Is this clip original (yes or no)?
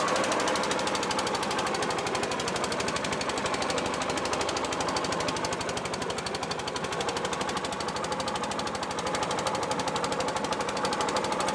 yes